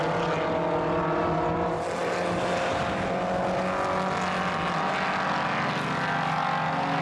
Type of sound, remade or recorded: recorded